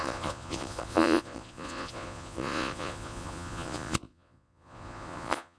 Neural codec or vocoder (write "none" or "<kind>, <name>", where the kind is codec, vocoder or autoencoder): vocoder, Vocos